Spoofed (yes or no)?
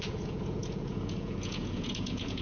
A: yes